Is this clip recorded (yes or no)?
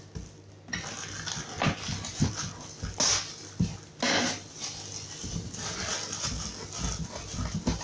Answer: yes